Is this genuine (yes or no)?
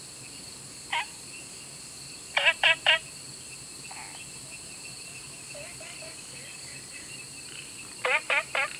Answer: yes